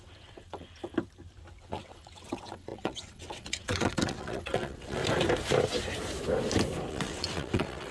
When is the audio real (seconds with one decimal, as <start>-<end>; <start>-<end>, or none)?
0.9-1.6; 5.0-6.9